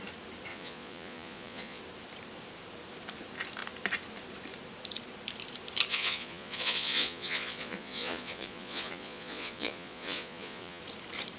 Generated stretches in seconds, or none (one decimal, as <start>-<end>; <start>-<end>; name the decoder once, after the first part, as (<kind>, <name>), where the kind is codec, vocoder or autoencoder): 0.5-1.8 (vocoder, Vocos); 5.9-10.8